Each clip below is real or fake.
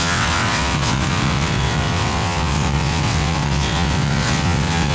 fake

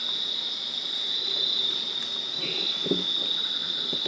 real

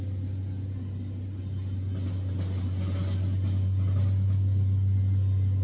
real